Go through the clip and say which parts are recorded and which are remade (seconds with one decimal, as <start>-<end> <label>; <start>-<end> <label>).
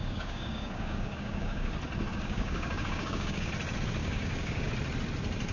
0.0-1.7 remade; 1.7-2.1 recorded; 2.1-3.5 remade; 3.5-4.0 recorded; 4.0-4.7 remade; 4.7-5.5 recorded